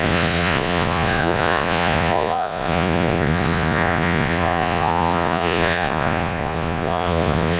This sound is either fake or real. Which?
fake